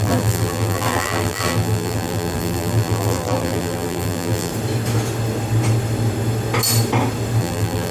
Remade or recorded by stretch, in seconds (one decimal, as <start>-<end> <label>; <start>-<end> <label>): 0.0-4.5 remade; 4.5-7.4 recorded; 7.4-7.9 remade

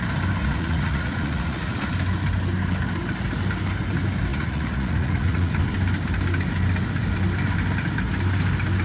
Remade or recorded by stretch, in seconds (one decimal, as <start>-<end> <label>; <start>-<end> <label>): 0.0-0.4 recorded; 0.4-1.9 remade; 1.9-4.3 recorded; 4.3-5.6 remade; 5.6-8.8 recorded

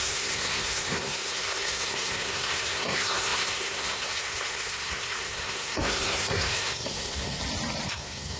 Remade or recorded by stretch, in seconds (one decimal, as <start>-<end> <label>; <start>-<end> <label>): 0.0-7.4 remade; 7.4-7.9 recorded; 7.9-8.4 remade